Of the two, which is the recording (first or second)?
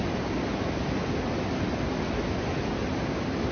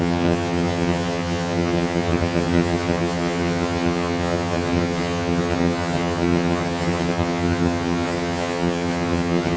first